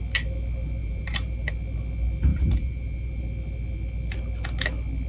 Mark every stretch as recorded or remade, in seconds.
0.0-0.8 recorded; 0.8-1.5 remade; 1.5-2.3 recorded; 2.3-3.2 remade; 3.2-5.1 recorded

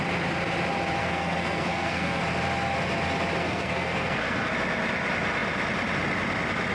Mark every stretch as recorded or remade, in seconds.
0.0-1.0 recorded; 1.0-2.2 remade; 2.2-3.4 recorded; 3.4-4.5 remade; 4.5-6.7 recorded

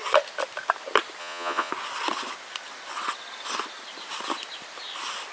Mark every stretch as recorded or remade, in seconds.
0.0-1.2 recorded; 1.2-1.7 remade; 1.7-5.3 recorded

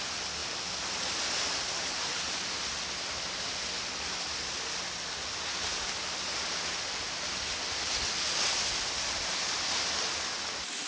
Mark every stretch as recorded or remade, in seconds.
0.0-10.9 recorded

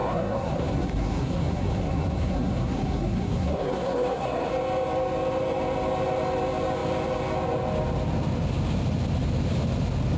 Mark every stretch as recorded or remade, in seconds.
0.0-4.5 remade; 4.5-10.2 recorded

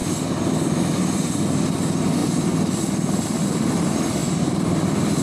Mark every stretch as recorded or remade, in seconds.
0.0-0.8 recorded; 0.8-4.2 remade; 4.2-5.2 recorded